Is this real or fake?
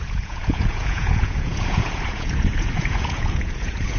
fake